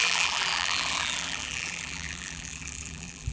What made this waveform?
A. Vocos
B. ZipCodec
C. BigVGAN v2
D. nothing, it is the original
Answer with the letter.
C